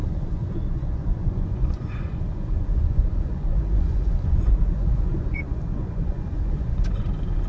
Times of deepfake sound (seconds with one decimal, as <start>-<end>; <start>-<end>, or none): 0.0-7.5

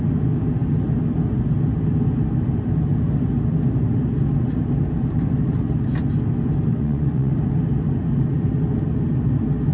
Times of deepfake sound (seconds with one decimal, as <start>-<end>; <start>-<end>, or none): 6.7-7.3

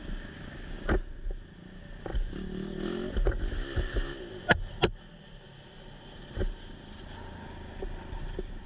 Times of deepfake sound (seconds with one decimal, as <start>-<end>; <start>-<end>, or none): none

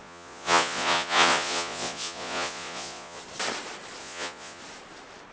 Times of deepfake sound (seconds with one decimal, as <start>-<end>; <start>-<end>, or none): 0.0-3.2; 4.0-4.6

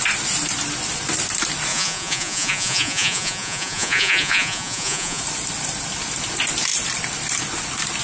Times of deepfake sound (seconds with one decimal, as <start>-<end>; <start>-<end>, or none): 1.7-5.2